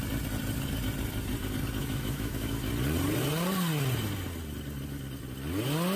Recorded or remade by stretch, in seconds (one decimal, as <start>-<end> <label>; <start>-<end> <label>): 0.0-1.8 recorded; 1.8-2.7 remade; 2.7-6.0 recorded